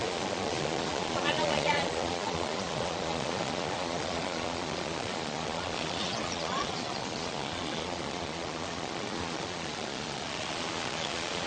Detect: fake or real fake